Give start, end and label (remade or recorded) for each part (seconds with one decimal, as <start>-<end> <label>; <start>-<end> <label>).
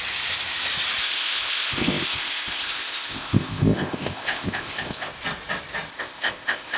0.0-1.0 recorded; 1.0-5.1 remade; 5.1-5.9 recorded; 5.9-6.8 remade